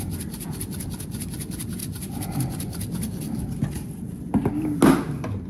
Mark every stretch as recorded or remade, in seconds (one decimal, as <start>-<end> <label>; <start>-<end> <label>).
0.0-5.5 recorded